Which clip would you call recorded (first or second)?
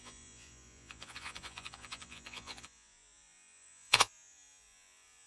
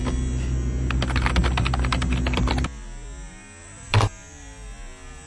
second